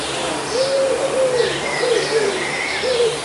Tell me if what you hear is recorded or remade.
remade